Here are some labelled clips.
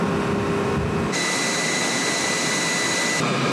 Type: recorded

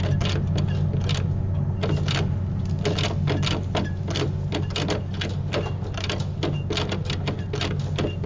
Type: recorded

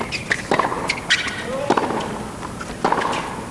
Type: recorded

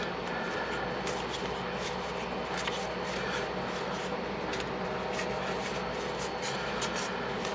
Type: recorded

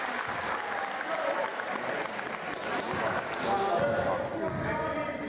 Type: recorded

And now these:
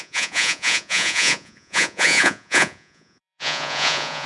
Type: remade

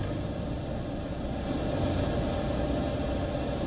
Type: recorded